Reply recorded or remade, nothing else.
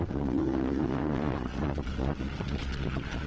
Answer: remade